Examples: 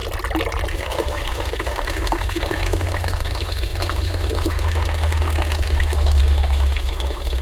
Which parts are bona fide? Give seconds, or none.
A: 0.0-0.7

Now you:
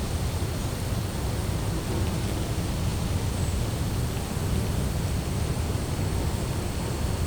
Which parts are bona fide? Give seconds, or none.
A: 0.0-7.3